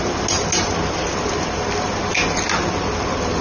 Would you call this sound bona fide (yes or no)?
yes